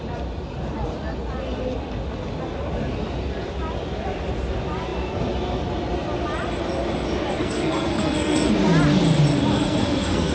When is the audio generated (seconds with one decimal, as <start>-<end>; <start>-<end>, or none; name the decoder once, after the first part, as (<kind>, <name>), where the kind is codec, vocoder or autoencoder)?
7.4-8.5 (codec, SNAC); 9.5-10.3